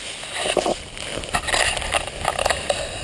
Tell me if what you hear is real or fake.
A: real